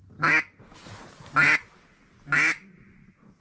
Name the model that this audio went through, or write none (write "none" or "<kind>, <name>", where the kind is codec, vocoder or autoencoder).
none